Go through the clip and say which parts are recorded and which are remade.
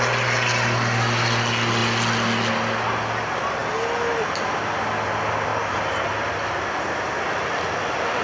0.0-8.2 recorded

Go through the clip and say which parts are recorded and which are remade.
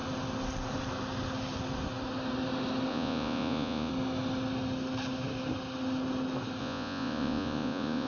0.0-2.9 recorded; 2.9-3.9 remade; 3.9-6.6 recorded; 6.6-8.1 remade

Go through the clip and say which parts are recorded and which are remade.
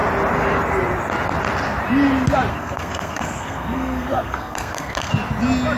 0.0-2.5 recorded; 2.5-5.1 remade; 5.1-5.8 recorded